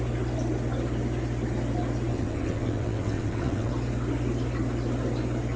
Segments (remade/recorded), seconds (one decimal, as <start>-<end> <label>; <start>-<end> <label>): 0.0-2.1 recorded; 2.1-3.7 remade; 3.7-5.6 recorded

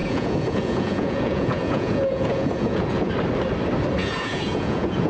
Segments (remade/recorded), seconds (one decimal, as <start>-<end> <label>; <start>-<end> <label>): 0.0-3.1 remade; 3.1-4.0 recorded; 4.0-5.1 remade

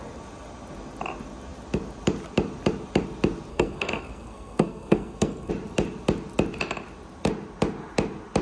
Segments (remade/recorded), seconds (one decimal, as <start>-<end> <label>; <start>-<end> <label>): 0.0-3.5 recorded; 3.5-5.5 remade; 5.5-8.4 recorded

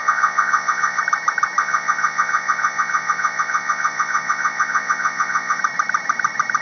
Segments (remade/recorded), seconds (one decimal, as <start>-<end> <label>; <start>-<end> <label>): 0.0-1.0 remade; 1.0-1.6 recorded; 1.6-5.6 remade; 5.6-6.6 recorded

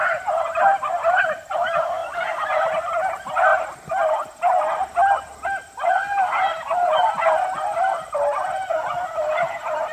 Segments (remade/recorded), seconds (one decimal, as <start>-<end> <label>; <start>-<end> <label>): 0.0-9.9 recorded

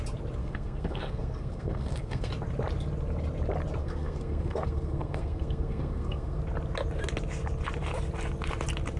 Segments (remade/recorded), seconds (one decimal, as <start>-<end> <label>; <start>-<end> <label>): 0.0-0.4 recorded; 0.4-2.3 remade; 2.3-3.8 recorded; 3.8-6.4 remade; 6.4-9.0 recorded

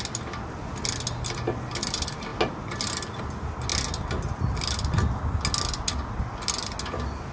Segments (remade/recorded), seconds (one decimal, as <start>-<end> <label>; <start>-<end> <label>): 0.0-7.3 recorded

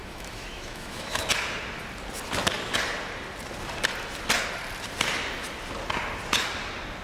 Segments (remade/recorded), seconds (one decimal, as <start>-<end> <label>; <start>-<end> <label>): 0.0-1.2 remade; 1.2-7.0 recorded